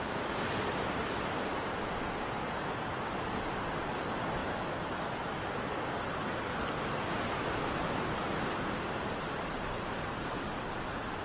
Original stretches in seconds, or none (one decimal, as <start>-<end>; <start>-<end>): 0.0-11.2